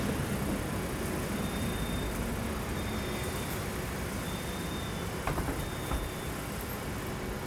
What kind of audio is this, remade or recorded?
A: recorded